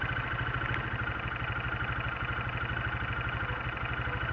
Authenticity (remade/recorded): recorded